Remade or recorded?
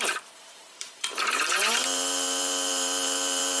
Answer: remade